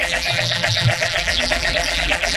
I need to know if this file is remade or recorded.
remade